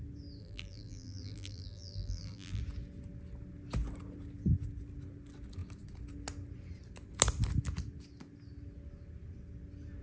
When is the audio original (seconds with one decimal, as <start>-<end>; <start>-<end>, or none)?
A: 0.0-0.4; 2.6-10.0